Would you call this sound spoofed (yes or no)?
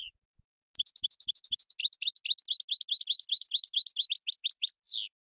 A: no